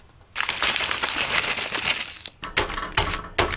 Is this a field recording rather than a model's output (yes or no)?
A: yes